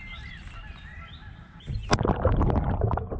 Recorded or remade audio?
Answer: recorded